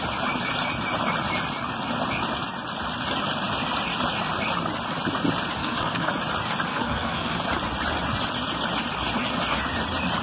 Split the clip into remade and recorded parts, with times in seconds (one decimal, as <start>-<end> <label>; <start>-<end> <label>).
0.0-5.6 recorded; 5.6-6.1 remade; 6.1-6.7 recorded; 6.7-7.4 remade; 7.4-10.2 recorded